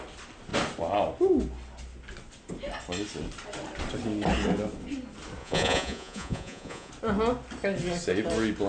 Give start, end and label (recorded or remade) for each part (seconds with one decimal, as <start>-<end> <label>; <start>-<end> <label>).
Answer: 0.0-5.4 recorded; 5.4-6.9 remade; 6.9-8.7 recorded